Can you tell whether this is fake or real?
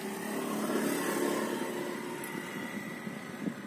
real